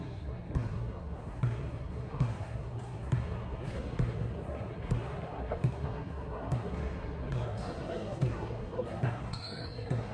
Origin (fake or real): fake